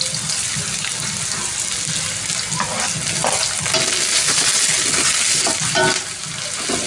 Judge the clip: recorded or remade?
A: recorded